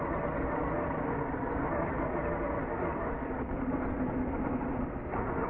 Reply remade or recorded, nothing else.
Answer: recorded